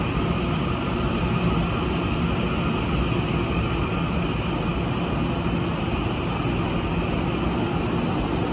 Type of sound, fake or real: real